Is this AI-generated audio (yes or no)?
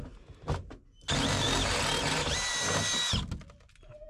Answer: no